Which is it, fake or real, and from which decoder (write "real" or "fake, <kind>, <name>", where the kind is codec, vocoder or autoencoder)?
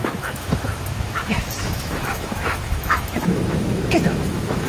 fake, autoencoder, DAC-VAE